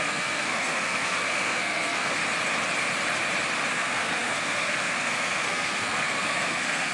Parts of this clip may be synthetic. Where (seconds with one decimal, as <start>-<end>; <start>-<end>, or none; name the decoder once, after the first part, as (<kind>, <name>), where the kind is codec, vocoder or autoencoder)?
0.0-2.2 (codec, SNAC); 3.7-6.9

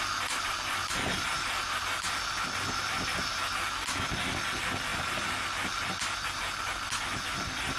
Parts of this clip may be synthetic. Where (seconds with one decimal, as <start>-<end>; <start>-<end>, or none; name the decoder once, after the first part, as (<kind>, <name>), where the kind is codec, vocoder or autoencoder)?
none

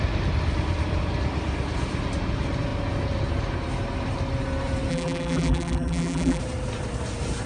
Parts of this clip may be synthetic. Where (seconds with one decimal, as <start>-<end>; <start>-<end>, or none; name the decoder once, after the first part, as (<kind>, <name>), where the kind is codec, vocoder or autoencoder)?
4.9-6.4 (vocoder, BigVGAN v2)